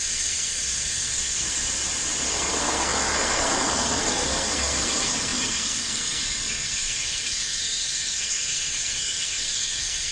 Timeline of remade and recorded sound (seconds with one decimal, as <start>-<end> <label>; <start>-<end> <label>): 0.0-1.6 remade; 1.6-2.3 recorded; 2.3-10.1 remade